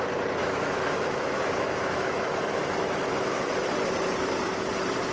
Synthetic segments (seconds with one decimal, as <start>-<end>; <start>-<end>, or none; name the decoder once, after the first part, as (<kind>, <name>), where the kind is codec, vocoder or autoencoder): 0.4-3.5 (autoencoder, DAC-VAE)